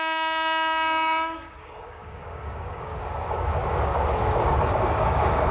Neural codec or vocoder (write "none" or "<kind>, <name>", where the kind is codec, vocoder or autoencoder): codec, DAC